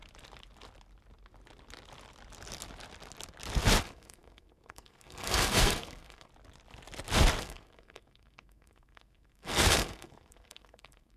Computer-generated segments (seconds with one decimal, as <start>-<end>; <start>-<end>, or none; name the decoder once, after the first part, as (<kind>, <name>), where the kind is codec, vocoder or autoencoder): 3.8-6.3 (codec, SNAC); 7.4-11.2